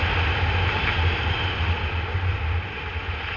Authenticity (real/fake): real